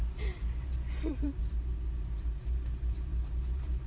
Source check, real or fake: fake